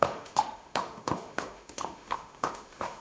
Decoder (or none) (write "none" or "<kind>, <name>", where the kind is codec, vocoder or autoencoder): autoencoder, DAC-VAE